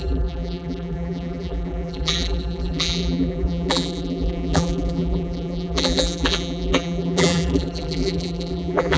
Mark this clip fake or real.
fake